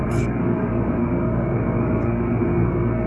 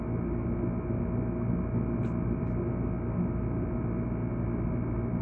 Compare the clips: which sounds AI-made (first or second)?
first